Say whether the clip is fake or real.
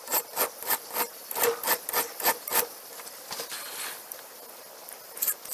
real